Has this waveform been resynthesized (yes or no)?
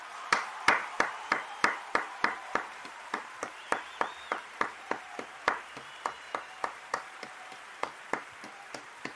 yes